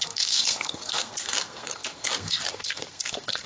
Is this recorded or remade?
remade